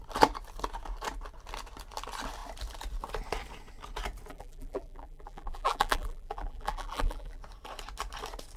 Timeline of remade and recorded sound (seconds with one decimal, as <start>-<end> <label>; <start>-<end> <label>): 0.0-4.3 recorded; 4.3-7.4 remade; 7.4-8.6 recorded